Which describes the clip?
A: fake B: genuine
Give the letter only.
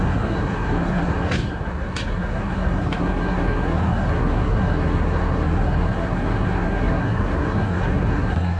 A